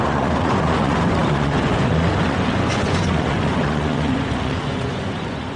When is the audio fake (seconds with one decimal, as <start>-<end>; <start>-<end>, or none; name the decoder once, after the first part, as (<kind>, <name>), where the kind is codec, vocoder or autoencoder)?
0.0-5.6 (vocoder, Vocos)